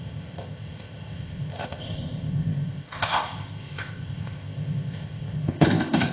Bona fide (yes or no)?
no